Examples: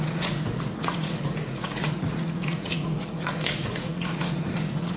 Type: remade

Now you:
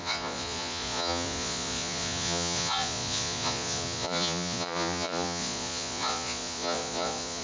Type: remade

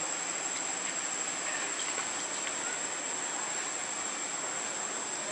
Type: recorded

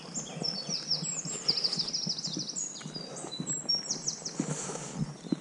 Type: recorded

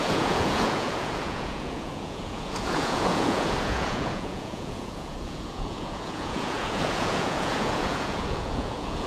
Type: remade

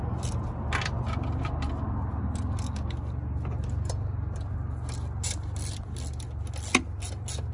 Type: recorded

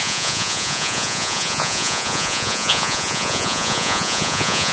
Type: remade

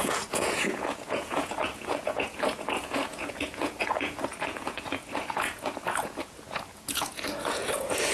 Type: remade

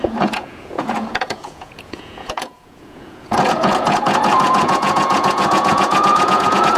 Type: remade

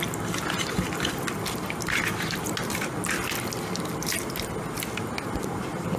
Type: recorded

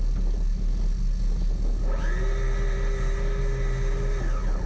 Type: recorded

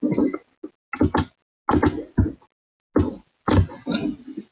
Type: recorded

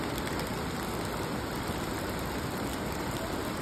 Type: recorded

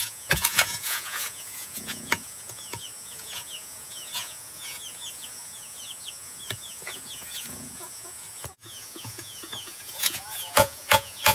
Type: remade